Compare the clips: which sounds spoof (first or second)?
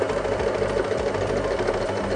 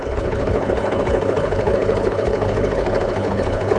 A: second